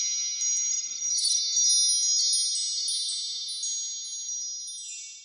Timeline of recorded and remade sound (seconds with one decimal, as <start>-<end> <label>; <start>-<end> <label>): 0.0-0.7 recorded; 0.7-1.4 remade; 1.4-5.2 recorded